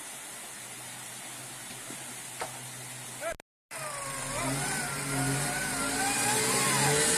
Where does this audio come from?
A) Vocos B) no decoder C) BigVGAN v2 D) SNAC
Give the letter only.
B